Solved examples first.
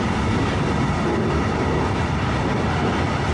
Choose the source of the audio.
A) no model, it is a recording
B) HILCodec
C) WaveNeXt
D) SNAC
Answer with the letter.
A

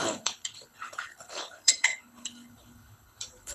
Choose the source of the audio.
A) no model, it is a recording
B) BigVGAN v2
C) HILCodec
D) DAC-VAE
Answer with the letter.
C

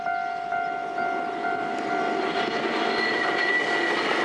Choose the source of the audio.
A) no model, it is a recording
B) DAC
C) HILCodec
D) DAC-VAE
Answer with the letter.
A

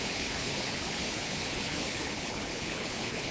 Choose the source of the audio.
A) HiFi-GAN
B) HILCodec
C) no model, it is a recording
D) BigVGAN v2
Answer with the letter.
B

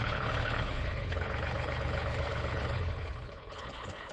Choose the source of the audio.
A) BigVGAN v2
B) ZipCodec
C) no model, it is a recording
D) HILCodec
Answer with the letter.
D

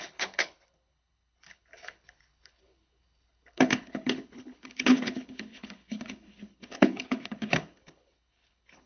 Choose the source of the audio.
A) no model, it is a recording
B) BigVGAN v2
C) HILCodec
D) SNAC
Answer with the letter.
C